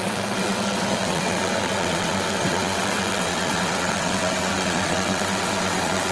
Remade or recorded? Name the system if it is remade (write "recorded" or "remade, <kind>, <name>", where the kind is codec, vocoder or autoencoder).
remade, vocoder, WaveNeXt